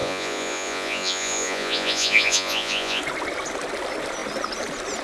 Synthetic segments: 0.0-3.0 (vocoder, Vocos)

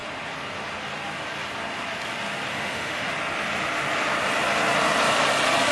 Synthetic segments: 2.5-3.1 (autoencoder, DAC-VAE)

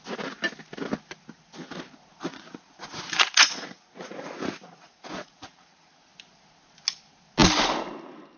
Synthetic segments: 2.3-6.1 (vocoder, Vocos)

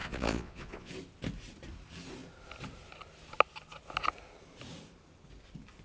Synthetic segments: 0.0-0.9 (vocoder, Vocos)

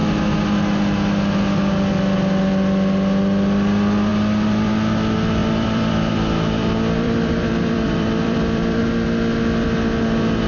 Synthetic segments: 5.4-8.8 (vocoder, BigVGAN v2)

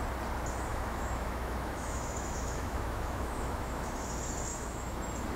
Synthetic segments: 0.7-3.9 (autoencoder, DAC-VAE); 4.5-5.0